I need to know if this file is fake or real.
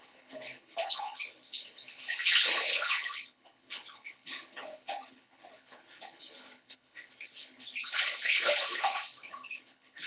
fake